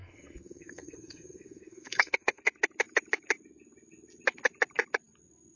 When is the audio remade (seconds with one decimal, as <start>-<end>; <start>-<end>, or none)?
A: 0.0-2.4